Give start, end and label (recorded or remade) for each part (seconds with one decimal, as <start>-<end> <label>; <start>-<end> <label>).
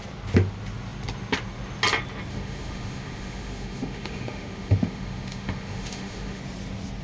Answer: 0.0-2.3 recorded; 2.3-6.4 remade; 6.4-7.0 recorded